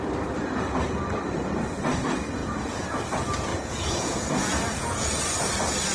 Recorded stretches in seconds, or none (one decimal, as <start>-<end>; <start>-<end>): 0.0-2.4; 2.9-3.5; 5.2-5.9